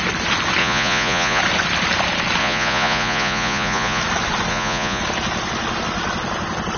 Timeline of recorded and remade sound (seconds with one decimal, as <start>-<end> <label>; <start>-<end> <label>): 0.0-0.6 recorded; 0.6-1.4 remade; 1.4-2.4 recorded; 2.4-4.0 remade; 4.0-4.5 recorded; 4.5-5.0 remade; 5.0-6.8 recorded